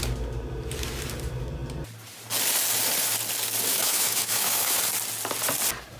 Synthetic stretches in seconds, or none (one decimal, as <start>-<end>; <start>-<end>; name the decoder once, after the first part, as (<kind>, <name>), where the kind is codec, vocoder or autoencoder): 3.7-4.8 (autoencoder, DAC-VAE)